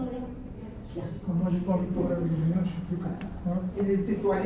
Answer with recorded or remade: remade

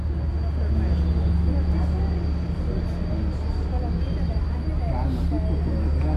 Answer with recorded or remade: recorded